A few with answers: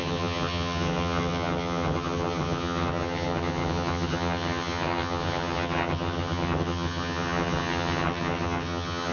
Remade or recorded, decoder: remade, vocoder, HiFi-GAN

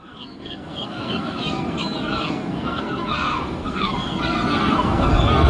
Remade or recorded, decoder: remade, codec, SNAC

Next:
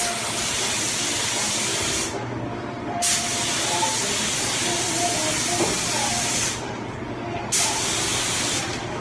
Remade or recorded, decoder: recorded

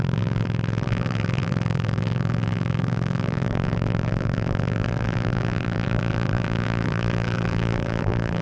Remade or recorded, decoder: remade, vocoder, BigVGAN v2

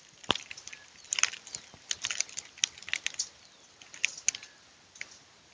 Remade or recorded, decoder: recorded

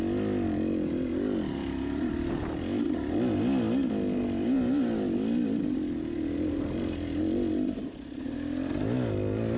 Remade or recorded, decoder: recorded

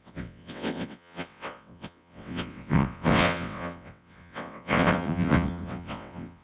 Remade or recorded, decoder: remade, vocoder, WaveNeXt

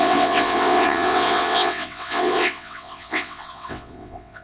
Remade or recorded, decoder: remade, vocoder, WaveNeXt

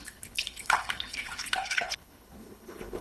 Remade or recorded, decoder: remade, codec, HILCodec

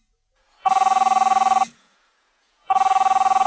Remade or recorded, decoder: remade, vocoder, Vocos